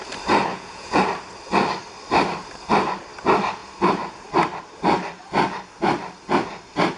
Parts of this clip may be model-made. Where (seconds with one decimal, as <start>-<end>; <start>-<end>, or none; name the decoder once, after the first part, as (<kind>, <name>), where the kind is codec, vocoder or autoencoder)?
0.5-1.0 (vocoder, Vocos)